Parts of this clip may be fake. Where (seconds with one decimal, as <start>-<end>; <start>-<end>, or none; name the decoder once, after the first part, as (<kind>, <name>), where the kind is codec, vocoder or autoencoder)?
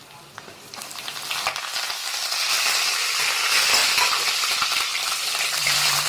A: 0.0-1.3 (vocoder, BigVGAN v2); 2.0-3.2; 3.8-6.1